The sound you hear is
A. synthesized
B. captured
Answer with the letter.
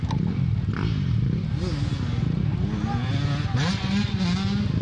B